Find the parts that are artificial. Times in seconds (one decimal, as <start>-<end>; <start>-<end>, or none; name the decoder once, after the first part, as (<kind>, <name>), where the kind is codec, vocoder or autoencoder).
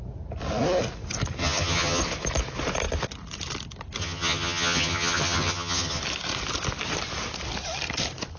1.4-2.0 (vocoder, HiFi-GAN); 4.0-6.0